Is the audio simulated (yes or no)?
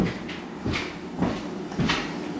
no